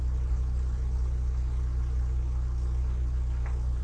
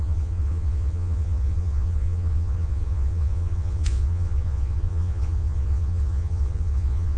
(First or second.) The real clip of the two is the first